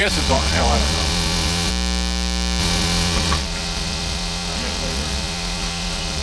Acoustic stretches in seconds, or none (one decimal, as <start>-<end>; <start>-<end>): 1.7-2.6